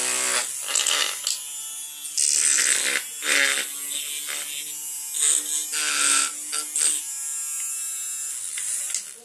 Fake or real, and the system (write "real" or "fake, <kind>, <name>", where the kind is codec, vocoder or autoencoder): real